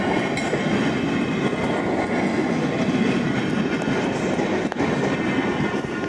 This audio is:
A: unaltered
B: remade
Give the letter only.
A